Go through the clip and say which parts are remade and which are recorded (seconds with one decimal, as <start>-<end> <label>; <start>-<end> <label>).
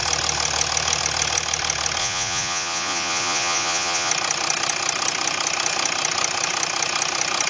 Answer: 0.0-2.0 recorded; 2.0-4.1 remade; 4.1-7.5 recorded